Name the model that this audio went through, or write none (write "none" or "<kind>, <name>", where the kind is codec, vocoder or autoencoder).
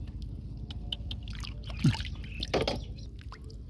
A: none